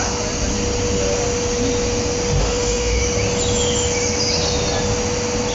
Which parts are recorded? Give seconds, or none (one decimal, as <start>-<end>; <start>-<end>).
0.0-2.4; 3.0-5.5